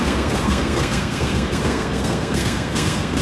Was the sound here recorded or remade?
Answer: remade